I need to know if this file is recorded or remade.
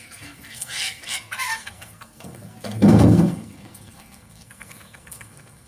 remade